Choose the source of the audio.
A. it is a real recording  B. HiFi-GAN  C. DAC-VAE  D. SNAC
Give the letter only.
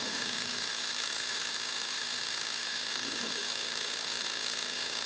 C